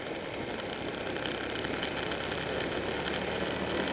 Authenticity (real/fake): real